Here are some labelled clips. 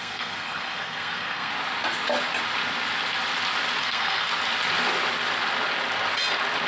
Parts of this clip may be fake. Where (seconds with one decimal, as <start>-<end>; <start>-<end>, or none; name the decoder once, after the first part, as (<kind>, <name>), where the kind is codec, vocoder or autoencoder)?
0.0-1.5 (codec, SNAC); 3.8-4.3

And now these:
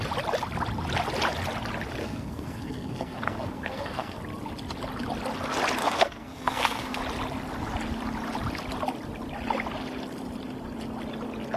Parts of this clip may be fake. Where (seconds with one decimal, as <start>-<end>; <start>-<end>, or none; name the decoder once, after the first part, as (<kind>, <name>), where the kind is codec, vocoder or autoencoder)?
2.0-4.2 (codec, SNAC); 5.8-7.0

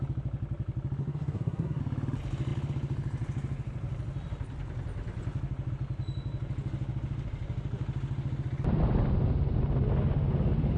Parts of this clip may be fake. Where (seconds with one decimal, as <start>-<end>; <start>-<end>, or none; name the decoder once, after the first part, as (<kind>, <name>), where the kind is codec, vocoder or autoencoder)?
1.0-1.8 (codec, SNAC)

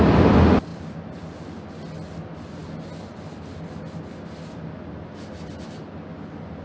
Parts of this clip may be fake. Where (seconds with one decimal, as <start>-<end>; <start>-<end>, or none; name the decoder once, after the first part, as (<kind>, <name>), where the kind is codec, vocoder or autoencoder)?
none

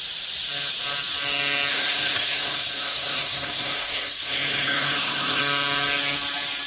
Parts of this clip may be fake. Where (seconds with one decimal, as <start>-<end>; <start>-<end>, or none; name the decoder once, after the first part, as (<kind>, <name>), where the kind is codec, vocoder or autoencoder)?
1.7-5.4 (codec, SNAC)

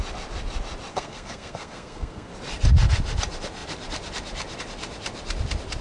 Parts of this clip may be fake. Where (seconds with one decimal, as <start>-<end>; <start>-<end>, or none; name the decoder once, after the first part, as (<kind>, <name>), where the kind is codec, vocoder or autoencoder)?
0.9-2.3 (codec, SNAC)

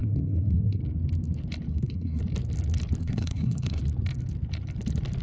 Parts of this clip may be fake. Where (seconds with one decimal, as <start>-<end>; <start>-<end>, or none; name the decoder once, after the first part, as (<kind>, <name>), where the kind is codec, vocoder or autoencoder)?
0.0-0.8 (codec, SNAC); 1.7-2.2; 3.0-3.8